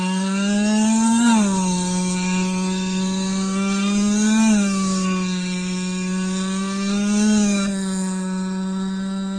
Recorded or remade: remade